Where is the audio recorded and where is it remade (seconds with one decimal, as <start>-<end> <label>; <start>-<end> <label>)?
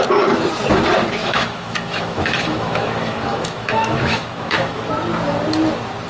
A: 0.0-1.2 recorded; 1.2-4.9 remade; 4.9-6.1 recorded